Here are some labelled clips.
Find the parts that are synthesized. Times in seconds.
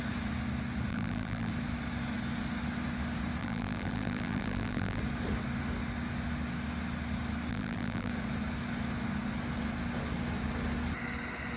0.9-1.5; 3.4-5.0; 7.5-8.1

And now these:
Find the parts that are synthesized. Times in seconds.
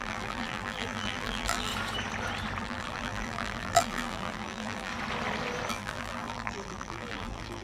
0.0-1.7; 2.6-4.9; 5.7-7.6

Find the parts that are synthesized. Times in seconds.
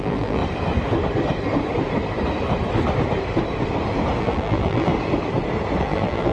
0.0-0.4; 4.2-4.9; 5.8-6.3